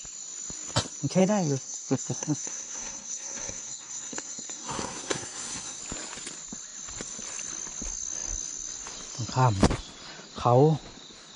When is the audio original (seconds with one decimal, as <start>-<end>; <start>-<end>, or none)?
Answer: 0.0-1.2; 5.8-11.4